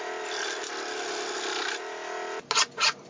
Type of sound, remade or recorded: recorded